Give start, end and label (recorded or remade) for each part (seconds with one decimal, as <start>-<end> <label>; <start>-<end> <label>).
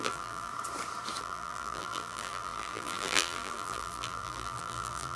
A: 0.0-0.5 remade; 0.5-1.2 recorded; 1.2-5.2 remade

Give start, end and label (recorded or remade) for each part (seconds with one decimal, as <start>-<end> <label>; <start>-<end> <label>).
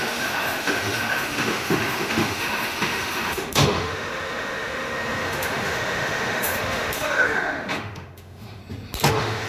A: 0.0-8.6 remade; 8.6-9.1 recorded; 9.1-9.5 remade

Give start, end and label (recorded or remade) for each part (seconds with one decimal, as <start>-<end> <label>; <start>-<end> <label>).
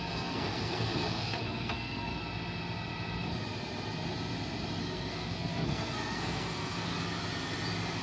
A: 0.0-2.1 remade; 2.1-4.8 recorded; 4.8-6.9 remade; 6.9-8.0 recorded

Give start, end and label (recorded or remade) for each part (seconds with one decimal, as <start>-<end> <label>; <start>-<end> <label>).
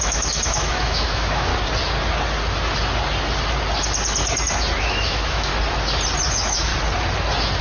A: 0.0-1.5 remade; 1.5-4.8 recorded; 4.8-5.5 remade; 5.5-6.3 recorded; 6.3-6.7 remade; 6.7-7.6 recorded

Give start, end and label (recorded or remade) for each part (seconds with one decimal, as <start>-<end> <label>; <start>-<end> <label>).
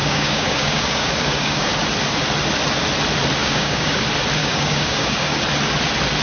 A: 0.0-1.7 remade; 1.7-3.4 recorded; 3.4-4.0 remade; 4.0-4.4 recorded; 4.4-5.4 remade; 5.4-6.2 recorded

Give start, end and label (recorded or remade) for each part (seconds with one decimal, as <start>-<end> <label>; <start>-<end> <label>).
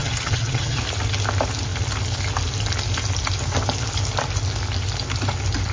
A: 0.0-0.8 remade; 0.8-5.7 recorded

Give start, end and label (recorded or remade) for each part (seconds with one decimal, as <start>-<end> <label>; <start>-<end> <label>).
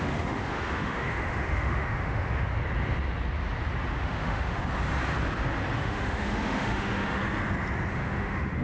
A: 0.0-2.5 remade; 2.5-3.9 recorded; 3.9-4.6 remade; 4.6-5.8 recorded; 5.8-7.2 remade; 7.2-7.9 recorded; 7.9-8.6 remade